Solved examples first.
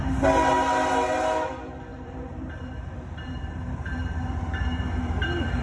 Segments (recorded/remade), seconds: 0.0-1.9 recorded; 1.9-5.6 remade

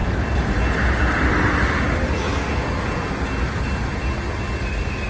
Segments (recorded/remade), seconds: 0.0-5.1 recorded

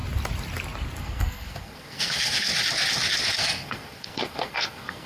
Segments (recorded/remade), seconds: 0.0-1.0 recorded; 1.0-2.5 remade; 2.5-3.3 recorded; 3.3-5.1 remade

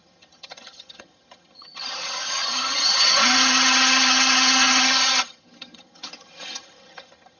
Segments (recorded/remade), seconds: 0.0-7.4 remade